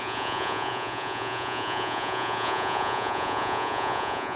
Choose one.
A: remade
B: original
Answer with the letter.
A